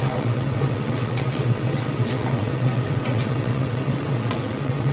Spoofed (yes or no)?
yes